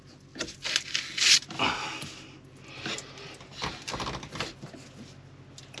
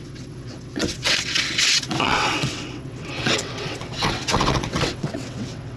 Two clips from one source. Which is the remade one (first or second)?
second